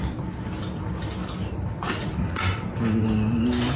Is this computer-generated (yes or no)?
no